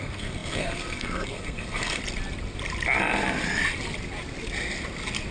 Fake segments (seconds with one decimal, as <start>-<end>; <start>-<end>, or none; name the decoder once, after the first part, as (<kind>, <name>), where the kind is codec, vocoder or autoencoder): 0.0-2.0 (codec, SNAC)